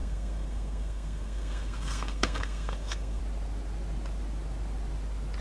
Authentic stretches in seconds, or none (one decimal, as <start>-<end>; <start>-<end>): 3.2-5.4